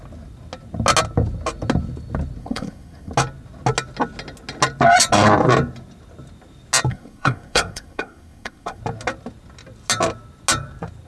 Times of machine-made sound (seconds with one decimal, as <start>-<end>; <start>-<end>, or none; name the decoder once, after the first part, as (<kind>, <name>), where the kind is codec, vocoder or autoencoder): 2.4-3.1 (codec, SNAC); 6.9-8.8